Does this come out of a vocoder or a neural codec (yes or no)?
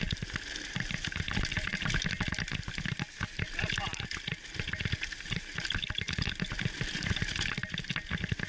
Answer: no